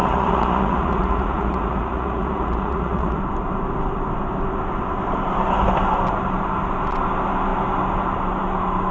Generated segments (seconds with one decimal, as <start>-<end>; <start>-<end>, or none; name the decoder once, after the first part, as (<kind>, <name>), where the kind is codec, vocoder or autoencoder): 0.0-3.2 (vocoder, Vocos)

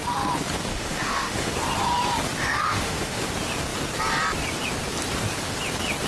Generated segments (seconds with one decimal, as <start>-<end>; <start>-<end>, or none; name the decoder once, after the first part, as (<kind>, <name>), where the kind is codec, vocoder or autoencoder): 0.7-1.5 (autoencoder, DAC-VAE); 2.4-3.2